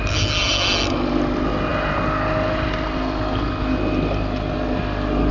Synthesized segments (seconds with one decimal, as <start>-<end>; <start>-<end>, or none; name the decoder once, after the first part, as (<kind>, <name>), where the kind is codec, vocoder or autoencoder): none